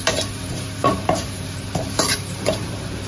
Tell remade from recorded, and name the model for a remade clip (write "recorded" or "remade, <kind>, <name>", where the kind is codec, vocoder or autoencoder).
remade, vocoder, BigVGAN v2